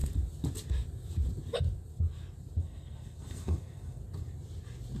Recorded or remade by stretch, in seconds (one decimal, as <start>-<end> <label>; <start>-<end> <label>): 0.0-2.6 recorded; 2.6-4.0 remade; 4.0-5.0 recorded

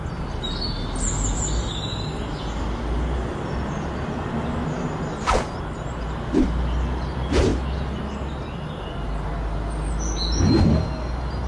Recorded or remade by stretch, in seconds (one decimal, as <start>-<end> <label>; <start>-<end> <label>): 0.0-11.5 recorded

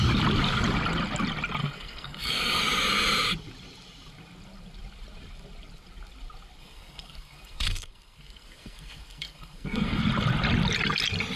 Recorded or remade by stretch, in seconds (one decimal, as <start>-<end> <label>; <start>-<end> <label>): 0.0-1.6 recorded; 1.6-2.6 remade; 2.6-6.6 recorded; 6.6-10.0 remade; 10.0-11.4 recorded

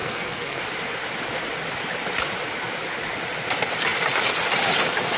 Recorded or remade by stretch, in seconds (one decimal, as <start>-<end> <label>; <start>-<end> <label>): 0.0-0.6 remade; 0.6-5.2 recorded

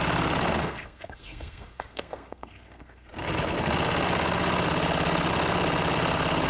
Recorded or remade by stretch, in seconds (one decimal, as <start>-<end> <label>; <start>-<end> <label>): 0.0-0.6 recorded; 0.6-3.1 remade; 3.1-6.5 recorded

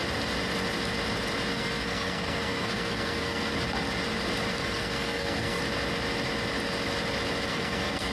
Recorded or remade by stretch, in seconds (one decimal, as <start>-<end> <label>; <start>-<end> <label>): 0.0-1.5 recorded; 1.5-3.5 remade; 3.5-4.5 recorded; 4.5-5.6 remade; 5.6-7.5 recorded; 7.5-8.1 remade

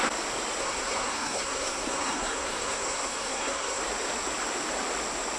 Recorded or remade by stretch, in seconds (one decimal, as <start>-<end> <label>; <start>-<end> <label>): 0.0-0.6 recorded; 0.6-3.8 remade; 3.8-5.4 recorded